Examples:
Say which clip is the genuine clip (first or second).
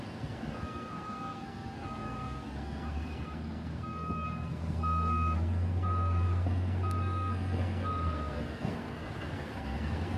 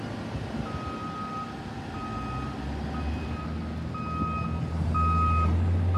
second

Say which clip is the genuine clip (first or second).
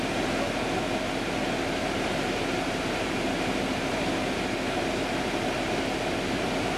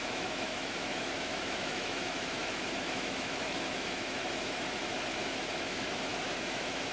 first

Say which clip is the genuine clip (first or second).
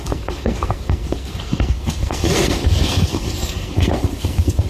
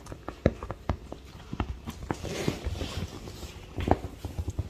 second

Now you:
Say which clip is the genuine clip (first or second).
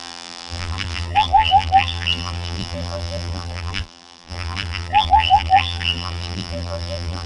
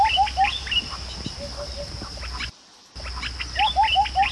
second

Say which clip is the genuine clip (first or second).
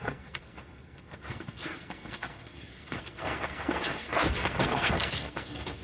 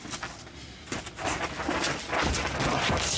second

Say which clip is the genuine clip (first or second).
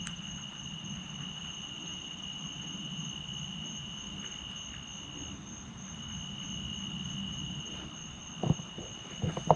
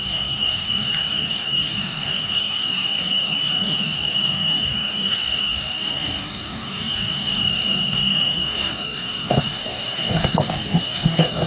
first